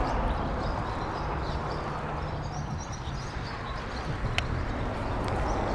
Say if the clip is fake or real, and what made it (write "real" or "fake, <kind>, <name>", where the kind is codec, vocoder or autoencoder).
real